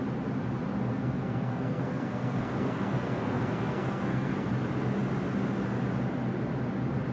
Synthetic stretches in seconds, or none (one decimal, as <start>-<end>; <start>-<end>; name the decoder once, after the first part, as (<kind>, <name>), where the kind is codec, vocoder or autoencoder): 0.9-4.5 (codec, SNAC)